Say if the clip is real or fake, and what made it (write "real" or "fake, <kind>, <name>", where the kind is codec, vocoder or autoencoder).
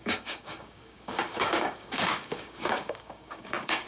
fake, codec, DAC